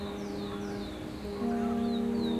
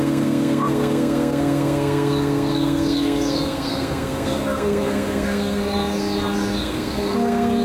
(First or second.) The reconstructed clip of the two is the second